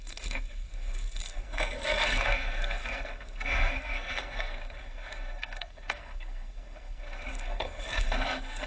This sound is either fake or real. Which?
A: fake